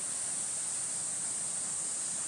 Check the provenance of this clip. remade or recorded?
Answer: remade